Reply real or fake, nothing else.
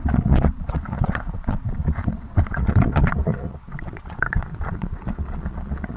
fake